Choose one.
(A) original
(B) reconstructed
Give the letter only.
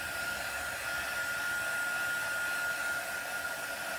A